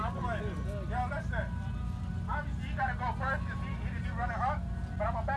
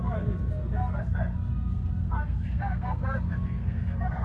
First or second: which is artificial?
second